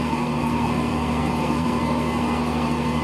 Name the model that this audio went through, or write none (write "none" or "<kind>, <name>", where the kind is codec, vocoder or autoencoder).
codec, SNAC